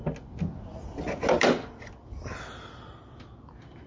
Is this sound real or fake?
real